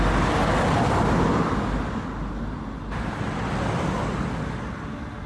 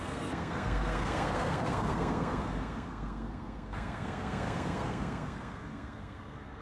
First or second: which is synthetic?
second